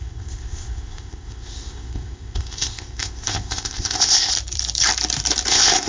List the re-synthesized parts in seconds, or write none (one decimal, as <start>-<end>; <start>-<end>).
0.0-4.3; 5.5-5.9